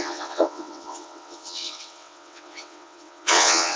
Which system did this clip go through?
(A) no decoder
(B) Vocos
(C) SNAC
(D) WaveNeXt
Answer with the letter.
D